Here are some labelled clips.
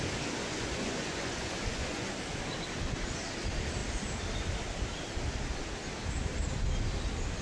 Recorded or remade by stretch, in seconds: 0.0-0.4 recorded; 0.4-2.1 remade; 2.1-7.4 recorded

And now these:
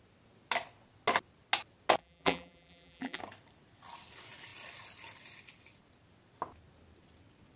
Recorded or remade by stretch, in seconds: 0.0-2.0 recorded; 2.0-3.2 remade; 3.2-7.6 recorded

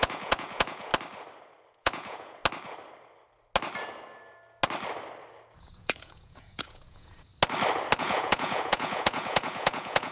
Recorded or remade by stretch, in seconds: 0.0-0.9 remade; 0.9-1.7 recorded; 1.7-2.4 remade; 2.4-5.6 recorded; 5.6-7.3 remade; 7.3-8.0 recorded; 8.0-10.1 remade

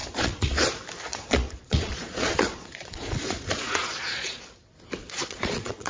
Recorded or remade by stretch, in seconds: 0.0-0.6 remade; 0.6-1.1 recorded; 1.1-4.4 remade; 4.4-5.0 recorded; 5.0-5.9 remade